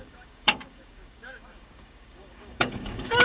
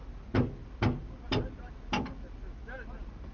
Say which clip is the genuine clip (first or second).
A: second